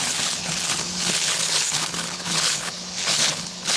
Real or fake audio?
fake